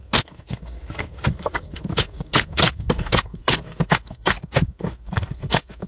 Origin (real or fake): fake